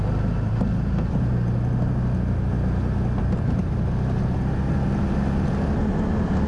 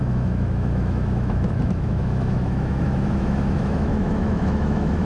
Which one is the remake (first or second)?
second